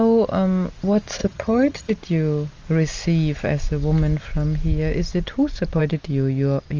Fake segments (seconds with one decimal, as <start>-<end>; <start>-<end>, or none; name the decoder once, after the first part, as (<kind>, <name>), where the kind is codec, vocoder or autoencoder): 1.2-1.9 (vocoder, HiFi-GAN)